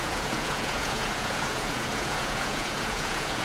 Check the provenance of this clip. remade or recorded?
remade